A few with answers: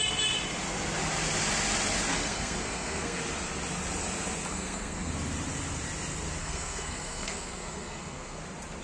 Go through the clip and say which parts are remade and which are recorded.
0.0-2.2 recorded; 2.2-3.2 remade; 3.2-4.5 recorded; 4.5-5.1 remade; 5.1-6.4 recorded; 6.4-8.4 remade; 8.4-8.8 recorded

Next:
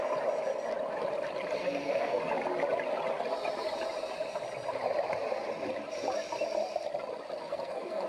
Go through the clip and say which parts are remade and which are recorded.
0.0-1.6 recorded; 1.6-2.2 remade; 2.2-7.4 recorded; 7.4-8.1 remade